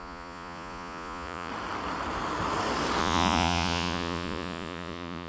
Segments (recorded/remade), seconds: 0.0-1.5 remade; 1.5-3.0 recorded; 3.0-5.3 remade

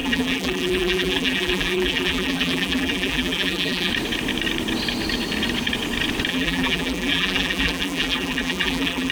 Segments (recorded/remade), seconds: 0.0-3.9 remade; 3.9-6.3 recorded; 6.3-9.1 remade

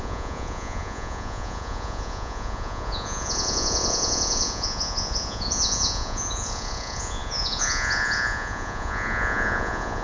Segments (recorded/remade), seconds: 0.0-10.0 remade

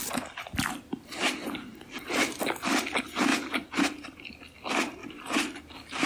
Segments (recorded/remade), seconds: 0.0-3.3 recorded; 3.3-4.2 remade; 4.2-5.0 recorded; 5.0-5.6 remade; 5.6-6.1 recorded